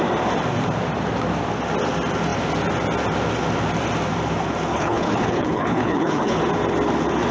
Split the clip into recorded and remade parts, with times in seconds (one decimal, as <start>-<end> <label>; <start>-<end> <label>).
0.0-4.7 recorded; 4.7-6.4 remade; 6.4-7.3 recorded